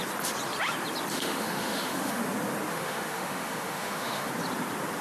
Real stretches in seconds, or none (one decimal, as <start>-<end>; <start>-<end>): 0.0-1.1; 2.2-2.7; 4.3-5.0